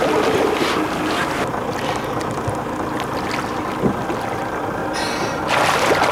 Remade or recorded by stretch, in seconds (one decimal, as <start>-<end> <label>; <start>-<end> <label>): 0.0-4.8 recorded; 4.8-5.4 remade; 5.4-6.1 recorded